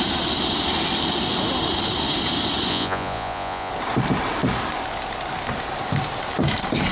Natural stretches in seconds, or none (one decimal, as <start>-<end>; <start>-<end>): 0.0-2.7; 3.7-6.9

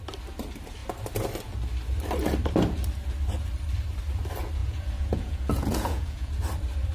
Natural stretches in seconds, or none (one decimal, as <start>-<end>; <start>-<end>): 0.0-4.6; 6.3-6.9

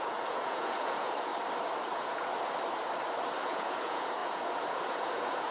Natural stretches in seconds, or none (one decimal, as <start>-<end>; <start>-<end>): 1.3-1.8; 2.3-3.4